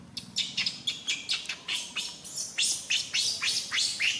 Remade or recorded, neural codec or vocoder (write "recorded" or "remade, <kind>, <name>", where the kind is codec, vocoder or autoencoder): recorded